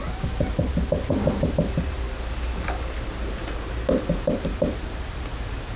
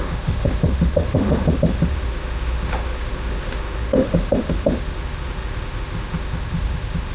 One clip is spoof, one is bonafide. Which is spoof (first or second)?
second